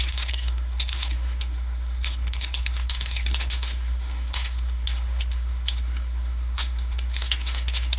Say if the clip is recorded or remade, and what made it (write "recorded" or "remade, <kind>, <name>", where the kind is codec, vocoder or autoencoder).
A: remade, codec, SNAC